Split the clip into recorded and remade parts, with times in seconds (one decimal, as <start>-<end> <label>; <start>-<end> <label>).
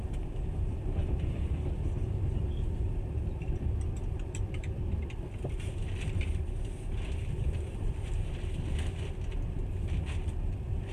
0.0-5.8 remade; 5.8-6.6 recorded; 6.6-10.9 remade